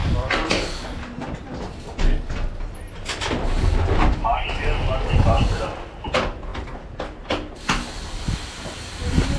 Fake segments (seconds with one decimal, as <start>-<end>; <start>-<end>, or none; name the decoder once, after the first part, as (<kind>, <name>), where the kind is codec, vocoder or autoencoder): none